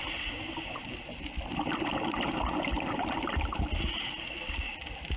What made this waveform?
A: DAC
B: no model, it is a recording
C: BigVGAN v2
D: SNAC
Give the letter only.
B